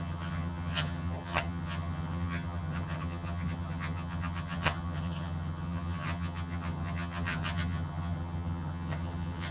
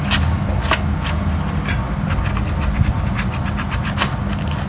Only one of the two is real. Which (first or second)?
second